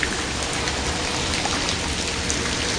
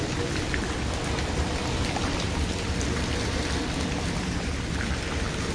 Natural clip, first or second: first